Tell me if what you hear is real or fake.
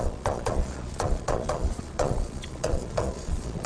fake